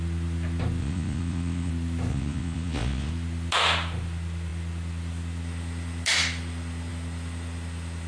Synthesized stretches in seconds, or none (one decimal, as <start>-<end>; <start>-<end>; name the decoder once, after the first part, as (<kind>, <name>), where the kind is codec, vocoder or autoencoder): 0.8-1.7 (vocoder, Vocos); 2.1-3.1